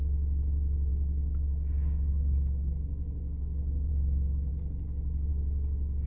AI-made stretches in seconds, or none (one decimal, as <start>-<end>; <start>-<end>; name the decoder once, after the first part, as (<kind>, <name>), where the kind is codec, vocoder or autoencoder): 0.9-3.9 (codec, DAC)